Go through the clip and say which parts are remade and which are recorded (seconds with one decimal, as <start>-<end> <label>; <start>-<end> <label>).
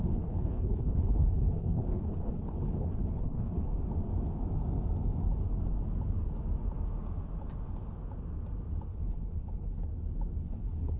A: 0.0-3.7 remade; 3.7-8.9 recorded; 8.9-9.9 remade; 9.9-10.4 recorded; 10.4-11.0 remade